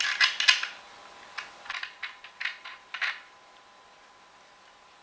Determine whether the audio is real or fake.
real